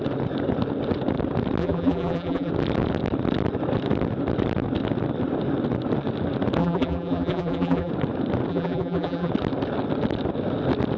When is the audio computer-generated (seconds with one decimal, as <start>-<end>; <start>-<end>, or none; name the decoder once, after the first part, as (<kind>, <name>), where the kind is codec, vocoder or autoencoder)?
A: 1.6-2.5 (vocoder, BigVGAN v2); 6.6-7.9; 8.5-9.3